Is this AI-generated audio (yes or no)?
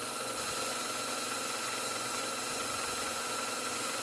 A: yes